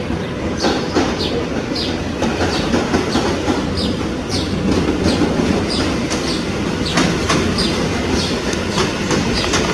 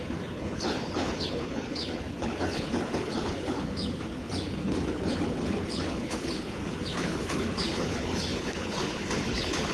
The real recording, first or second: first